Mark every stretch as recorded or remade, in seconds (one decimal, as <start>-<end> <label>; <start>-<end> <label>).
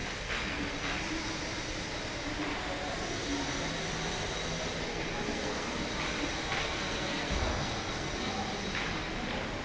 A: 0.0-1.0 remade; 1.0-4.9 recorded; 4.9-5.9 remade; 5.9-6.6 recorded; 6.6-8.3 remade; 8.3-9.6 recorded